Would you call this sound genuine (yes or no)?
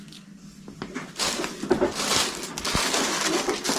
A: yes